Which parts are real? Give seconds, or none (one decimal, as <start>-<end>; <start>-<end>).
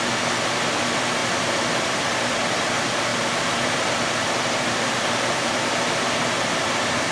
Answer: 0.0-1.2; 2.7-3.1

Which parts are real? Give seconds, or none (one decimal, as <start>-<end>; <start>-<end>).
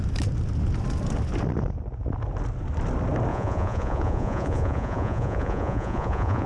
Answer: 0.0-3.3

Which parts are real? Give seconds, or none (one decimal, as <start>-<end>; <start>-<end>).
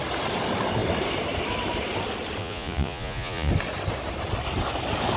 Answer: 0.0-2.4; 3.5-5.2